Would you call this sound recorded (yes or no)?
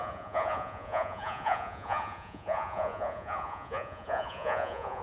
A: no